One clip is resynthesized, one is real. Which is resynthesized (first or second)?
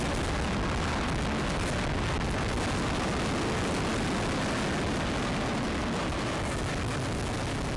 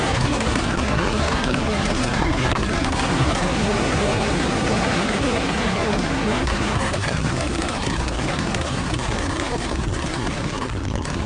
second